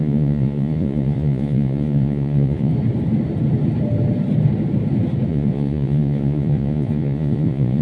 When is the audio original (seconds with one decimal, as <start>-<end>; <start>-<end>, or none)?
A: 2.7-5.3